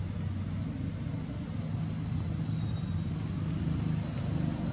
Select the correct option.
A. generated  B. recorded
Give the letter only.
B